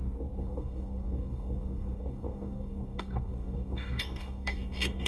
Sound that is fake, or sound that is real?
fake